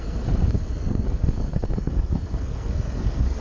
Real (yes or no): no